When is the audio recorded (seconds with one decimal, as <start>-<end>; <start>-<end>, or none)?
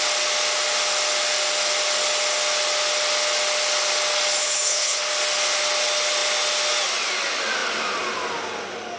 0.0-4.4; 5.0-9.0